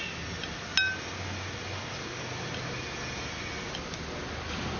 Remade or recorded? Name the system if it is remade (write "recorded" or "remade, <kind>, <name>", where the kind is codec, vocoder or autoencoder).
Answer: recorded